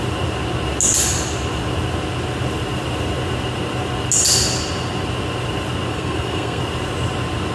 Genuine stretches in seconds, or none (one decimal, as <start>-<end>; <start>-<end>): 0.0-5.9; 6.6-7.5